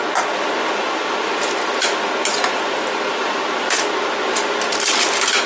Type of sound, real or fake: real